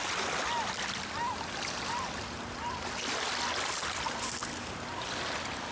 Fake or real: real